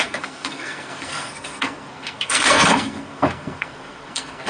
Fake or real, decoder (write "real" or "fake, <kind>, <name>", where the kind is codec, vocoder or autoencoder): fake, codec, SNAC